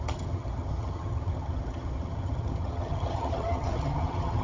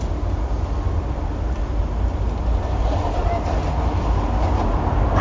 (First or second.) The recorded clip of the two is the second